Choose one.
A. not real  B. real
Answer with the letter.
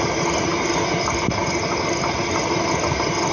A